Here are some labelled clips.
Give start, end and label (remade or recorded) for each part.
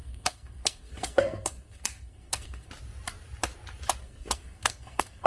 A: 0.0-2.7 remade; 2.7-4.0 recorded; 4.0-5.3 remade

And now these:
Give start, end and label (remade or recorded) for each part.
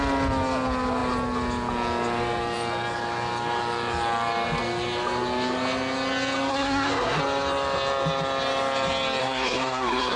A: 0.0-6.5 recorded; 6.5-7.2 remade; 7.2-9.2 recorded; 9.2-10.2 remade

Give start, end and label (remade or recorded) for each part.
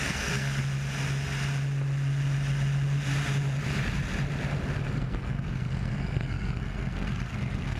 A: 0.0-0.6 remade; 0.6-4.8 recorded; 4.8-7.8 remade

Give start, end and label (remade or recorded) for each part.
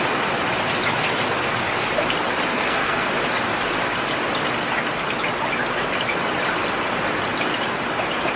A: 0.0-2.5 recorded; 2.5-3.1 remade; 3.1-8.4 recorded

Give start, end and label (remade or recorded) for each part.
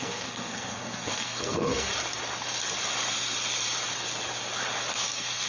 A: 0.0-1.9 remade; 1.9-4.9 recorded; 4.9-5.5 remade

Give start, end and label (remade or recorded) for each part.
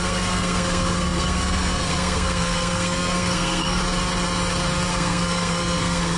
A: 0.0-3.8 remade; 3.8-4.9 recorded; 4.9-6.2 remade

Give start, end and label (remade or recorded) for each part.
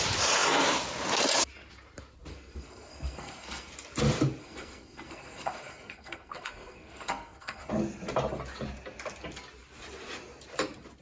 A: 0.0-2.3 recorded; 2.3-3.7 remade; 3.7-4.4 recorded; 4.4-7.7 remade; 7.7-11.0 recorded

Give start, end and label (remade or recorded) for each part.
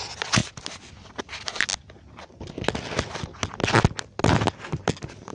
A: 0.0-5.3 recorded